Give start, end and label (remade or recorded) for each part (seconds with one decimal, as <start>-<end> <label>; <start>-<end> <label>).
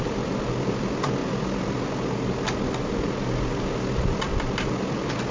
0.0-5.3 recorded